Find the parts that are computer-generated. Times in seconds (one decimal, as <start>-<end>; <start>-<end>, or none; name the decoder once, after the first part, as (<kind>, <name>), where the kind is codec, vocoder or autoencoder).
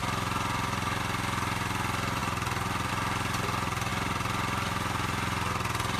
none